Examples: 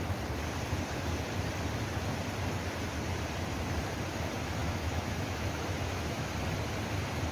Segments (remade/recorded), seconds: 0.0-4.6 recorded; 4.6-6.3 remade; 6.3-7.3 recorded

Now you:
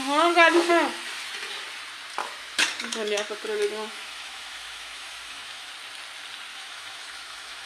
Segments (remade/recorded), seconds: 0.0-0.7 remade; 0.7-2.2 recorded; 2.2-5.7 remade; 5.7-6.5 recorded; 6.5-7.7 remade